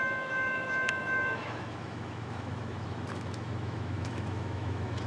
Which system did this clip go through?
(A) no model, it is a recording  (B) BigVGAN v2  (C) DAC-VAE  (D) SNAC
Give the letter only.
C